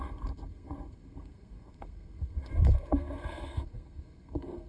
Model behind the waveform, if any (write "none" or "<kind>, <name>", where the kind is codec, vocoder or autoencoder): codec, SNAC